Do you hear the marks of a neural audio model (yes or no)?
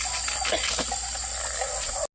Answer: no